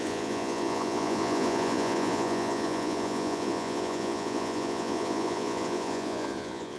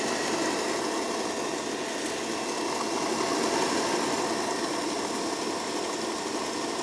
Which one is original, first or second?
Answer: second